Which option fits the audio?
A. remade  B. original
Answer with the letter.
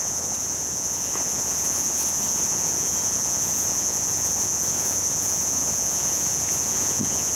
A